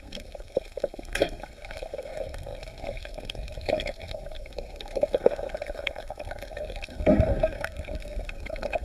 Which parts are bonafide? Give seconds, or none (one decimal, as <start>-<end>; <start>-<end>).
none